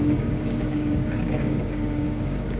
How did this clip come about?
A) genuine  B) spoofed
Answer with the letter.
B